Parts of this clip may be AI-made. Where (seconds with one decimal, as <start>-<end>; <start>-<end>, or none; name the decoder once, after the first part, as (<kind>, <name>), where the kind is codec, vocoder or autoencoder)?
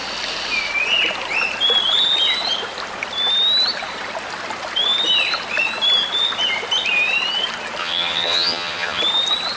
7.8-9.0 (vocoder, HiFi-GAN)